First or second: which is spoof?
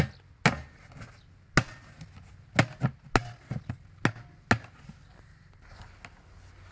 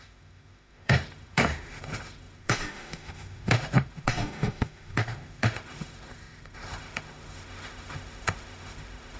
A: second